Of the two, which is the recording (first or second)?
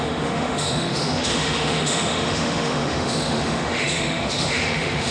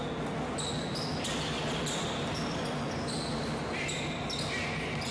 second